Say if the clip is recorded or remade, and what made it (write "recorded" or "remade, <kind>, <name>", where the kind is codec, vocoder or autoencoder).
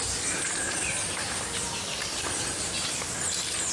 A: recorded